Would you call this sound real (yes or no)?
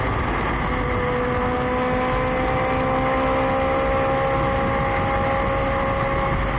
yes